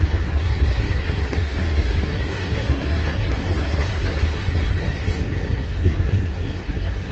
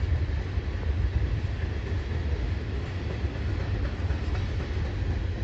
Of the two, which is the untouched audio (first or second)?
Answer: second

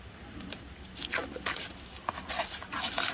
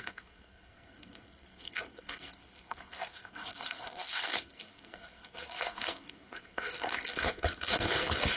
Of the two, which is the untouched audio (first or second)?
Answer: first